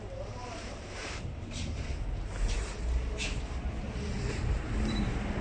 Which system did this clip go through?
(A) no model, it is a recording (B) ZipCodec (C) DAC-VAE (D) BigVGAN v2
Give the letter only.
D